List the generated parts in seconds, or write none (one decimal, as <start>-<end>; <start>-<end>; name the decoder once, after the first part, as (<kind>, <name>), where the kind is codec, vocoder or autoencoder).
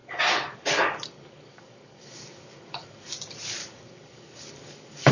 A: 0.0-3.1 (codec, DAC); 3.6-5.1